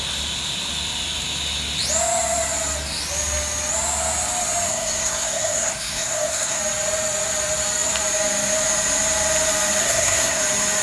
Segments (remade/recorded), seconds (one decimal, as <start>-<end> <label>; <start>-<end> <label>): 0.0-4.7 recorded; 4.7-6.6 remade; 6.6-9.8 recorded; 9.8-10.4 remade; 10.4-10.8 recorded